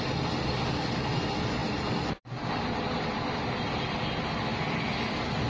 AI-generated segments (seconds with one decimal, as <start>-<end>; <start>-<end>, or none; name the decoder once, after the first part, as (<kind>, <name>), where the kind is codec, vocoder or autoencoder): none